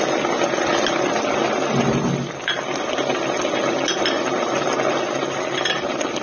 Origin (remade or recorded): recorded